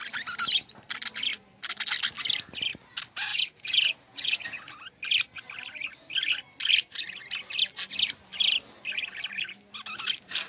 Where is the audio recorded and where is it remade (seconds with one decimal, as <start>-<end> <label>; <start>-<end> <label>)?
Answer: 0.0-3.3 recorded; 3.3-4.8 remade; 4.8-10.5 recorded